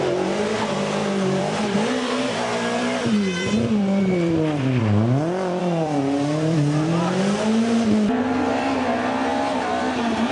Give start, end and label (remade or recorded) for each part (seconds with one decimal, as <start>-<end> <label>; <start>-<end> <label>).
0.0-1.0 recorded; 1.0-4.8 remade; 4.8-5.6 recorded; 5.6-7.2 remade; 7.2-10.3 recorded

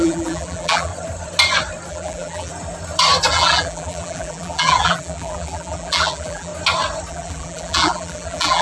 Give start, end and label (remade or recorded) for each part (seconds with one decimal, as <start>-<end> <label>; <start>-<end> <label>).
0.0-0.9 remade; 0.9-1.9 recorded; 1.9-2.5 remade; 2.5-3.3 recorded; 3.3-6.5 remade; 6.5-7.1 recorded; 7.1-8.6 remade

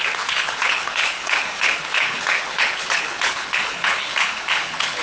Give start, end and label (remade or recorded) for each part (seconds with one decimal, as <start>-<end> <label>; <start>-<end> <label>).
0.0-5.0 remade